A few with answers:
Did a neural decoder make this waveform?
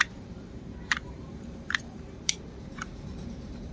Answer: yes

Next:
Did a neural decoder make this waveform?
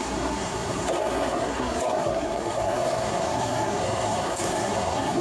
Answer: yes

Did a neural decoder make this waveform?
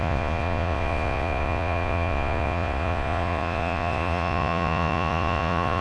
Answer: yes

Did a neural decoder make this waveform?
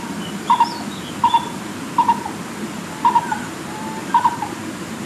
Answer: no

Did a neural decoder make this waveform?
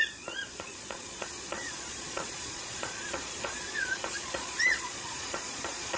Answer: yes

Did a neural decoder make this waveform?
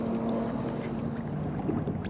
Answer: no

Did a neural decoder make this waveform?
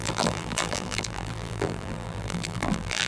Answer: yes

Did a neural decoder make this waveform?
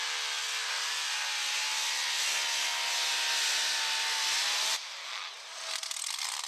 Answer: no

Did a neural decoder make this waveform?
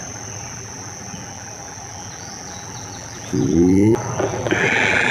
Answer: yes